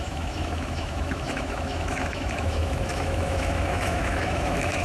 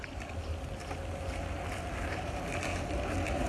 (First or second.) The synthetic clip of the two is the first